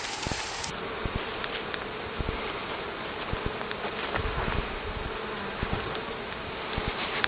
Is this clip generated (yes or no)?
no